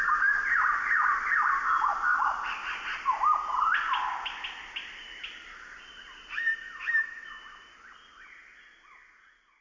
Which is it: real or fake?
real